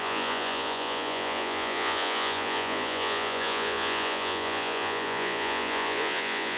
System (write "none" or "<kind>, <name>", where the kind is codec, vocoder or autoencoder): vocoder, Vocos